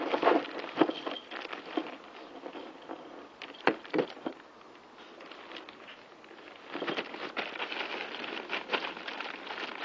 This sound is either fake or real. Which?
real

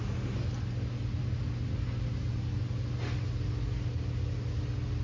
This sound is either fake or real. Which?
real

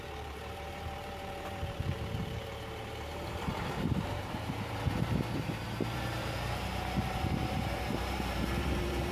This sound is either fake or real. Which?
fake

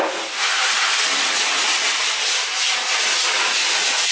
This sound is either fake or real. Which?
fake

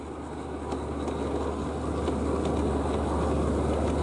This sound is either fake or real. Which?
real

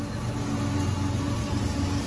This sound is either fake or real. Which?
real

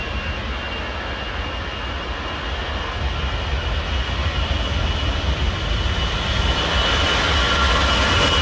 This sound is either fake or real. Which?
real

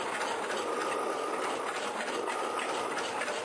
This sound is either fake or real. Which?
fake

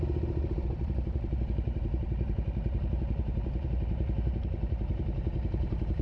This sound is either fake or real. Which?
fake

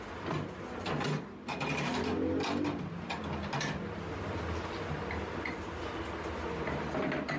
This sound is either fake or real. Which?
real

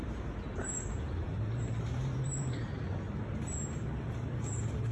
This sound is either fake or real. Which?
fake